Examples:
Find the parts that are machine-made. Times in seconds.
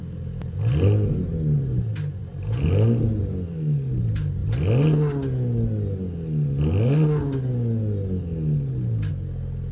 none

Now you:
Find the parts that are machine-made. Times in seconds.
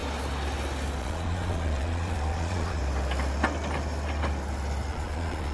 1.0-2.8 (vocoder, Vocos); 4.9-5.5